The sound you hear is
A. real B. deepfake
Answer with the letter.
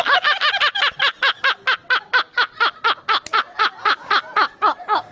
A